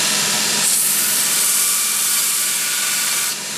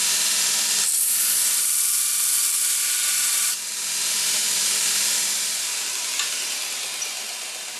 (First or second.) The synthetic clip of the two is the first